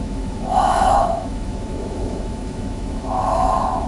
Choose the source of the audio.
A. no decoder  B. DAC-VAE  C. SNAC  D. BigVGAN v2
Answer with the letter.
B